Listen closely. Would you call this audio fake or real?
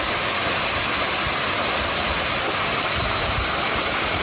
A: real